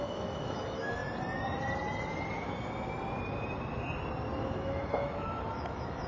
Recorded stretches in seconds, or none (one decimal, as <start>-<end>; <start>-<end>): 1.0-4.5